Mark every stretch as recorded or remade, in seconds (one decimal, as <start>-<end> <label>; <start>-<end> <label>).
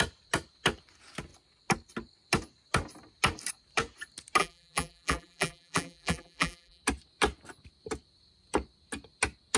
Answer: 0.0-4.4 recorded; 4.4-6.8 remade; 6.8-9.6 recorded